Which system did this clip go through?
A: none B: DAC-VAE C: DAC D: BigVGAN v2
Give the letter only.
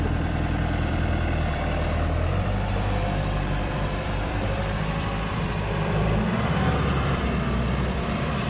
D